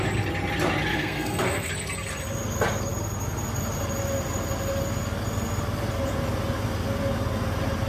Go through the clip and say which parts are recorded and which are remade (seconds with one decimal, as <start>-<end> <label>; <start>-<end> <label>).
0.0-0.9 recorded; 0.9-1.7 remade; 1.7-7.9 recorded